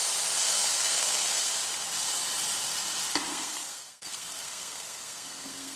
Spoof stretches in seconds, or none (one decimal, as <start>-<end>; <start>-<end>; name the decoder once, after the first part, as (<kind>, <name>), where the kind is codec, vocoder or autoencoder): 0.5-1.5 (codec, SNAC); 3.3-5.8